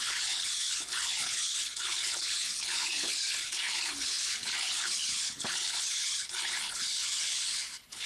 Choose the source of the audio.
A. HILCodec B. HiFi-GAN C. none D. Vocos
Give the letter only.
A